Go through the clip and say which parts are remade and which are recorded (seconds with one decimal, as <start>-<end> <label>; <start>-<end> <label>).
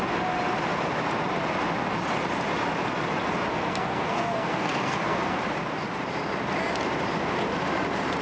0.0-3.5 recorded; 3.5-5.4 remade; 5.4-8.2 recorded